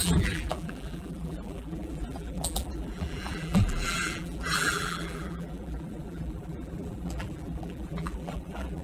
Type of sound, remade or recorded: remade